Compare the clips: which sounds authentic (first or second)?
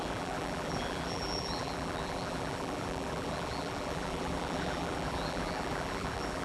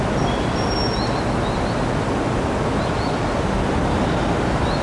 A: second